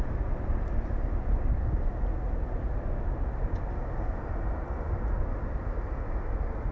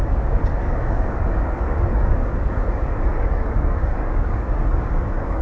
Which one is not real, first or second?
second